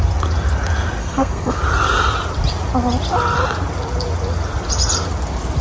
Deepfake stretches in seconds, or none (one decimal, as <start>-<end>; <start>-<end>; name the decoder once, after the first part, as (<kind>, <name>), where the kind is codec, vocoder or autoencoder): 1.0-1.6 (codec, SNAC)